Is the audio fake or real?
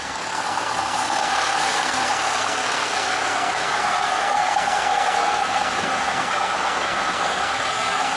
fake